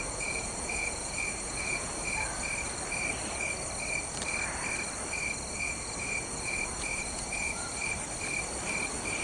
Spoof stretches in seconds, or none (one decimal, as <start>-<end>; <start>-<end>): 0.0-2.0; 5.5-7.7